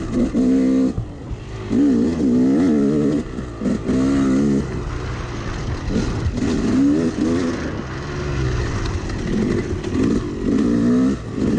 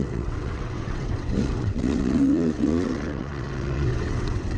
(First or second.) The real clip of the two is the first